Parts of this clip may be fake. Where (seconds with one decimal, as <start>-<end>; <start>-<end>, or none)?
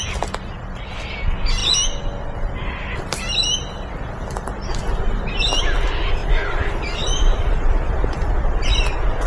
6.2-8.8